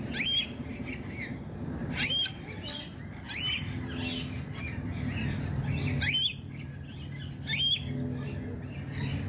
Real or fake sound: real